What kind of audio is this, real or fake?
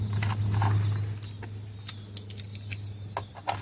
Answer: real